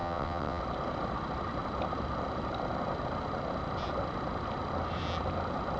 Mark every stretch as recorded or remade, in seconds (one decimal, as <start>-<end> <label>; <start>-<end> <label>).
0.0-0.6 remade; 0.6-5.8 recorded

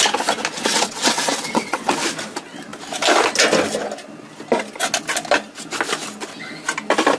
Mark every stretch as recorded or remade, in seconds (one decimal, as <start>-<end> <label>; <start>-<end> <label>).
0.0-0.6 recorded; 0.6-2.0 remade; 2.0-7.2 recorded

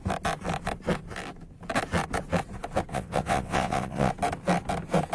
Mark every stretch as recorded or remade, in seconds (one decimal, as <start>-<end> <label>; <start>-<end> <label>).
0.0-2.9 recorded; 2.9-4.1 remade; 4.1-5.1 recorded